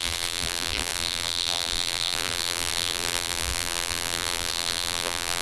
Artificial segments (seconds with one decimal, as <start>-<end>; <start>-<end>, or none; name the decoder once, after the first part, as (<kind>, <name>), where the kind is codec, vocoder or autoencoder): 0.0-5.4 (vocoder, BigVGAN v2)